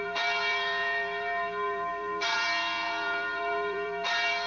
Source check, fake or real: fake